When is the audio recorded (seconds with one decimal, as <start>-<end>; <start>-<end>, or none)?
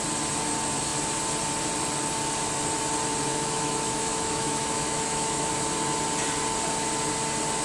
0.0-3.3; 5.5-7.6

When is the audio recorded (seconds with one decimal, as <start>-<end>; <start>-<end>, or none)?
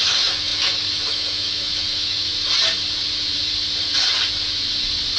2.3-5.2